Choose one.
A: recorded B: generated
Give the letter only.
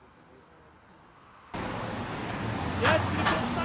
A